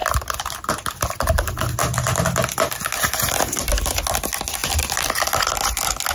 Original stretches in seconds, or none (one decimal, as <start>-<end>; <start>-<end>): 0.0-6.1